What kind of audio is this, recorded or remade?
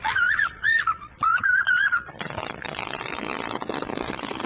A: remade